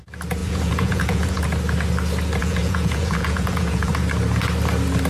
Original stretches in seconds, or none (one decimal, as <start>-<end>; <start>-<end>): 0.0-0.4; 1.4-2.4; 3.9-5.1